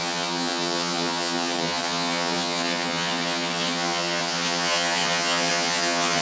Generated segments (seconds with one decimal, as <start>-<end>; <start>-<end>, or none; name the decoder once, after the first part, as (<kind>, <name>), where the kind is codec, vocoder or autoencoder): 0.0-6.2 (vocoder, HiFi-GAN)